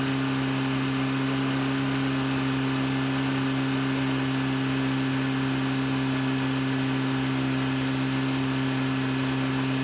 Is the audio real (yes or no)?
yes